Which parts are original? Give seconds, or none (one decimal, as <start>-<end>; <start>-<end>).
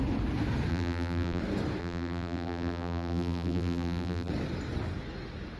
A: 0.0-0.7; 1.4-1.8; 4.3-5.6